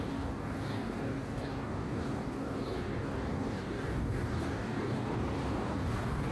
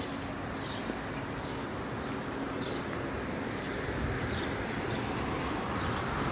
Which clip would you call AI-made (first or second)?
first